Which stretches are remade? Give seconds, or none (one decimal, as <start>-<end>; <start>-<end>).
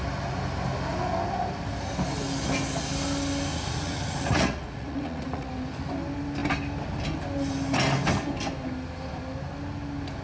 3.5-5.5